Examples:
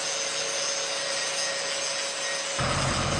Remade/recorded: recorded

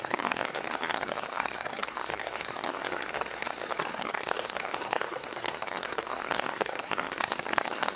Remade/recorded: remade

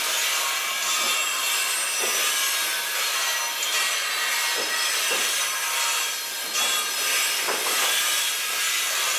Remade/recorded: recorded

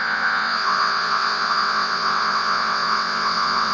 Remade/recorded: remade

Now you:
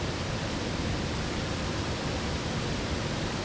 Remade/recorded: remade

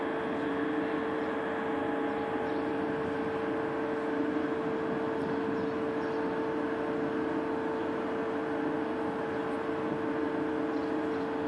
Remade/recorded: recorded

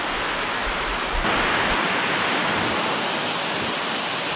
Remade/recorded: recorded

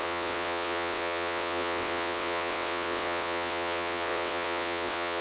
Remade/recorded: remade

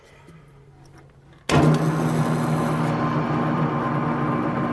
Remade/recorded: recorded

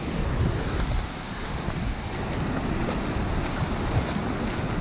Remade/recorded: recorded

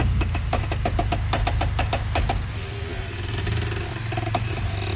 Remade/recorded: recorded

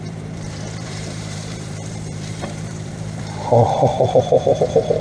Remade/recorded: remade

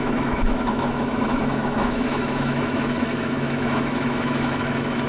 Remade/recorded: remade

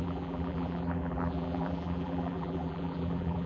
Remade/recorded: remade